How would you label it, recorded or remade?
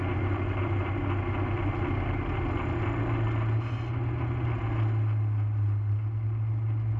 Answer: recorded